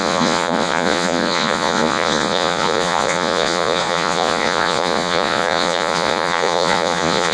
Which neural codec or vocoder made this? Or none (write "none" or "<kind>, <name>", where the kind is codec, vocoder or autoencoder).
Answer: vocoder, Vocos